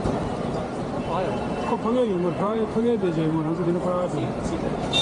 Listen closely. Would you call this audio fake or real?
fake